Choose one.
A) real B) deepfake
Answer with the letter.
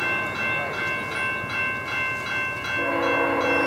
A